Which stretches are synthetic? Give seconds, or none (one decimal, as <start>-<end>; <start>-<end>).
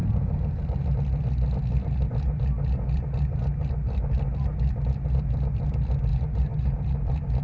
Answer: 0.0-0.9; 6.1-7.4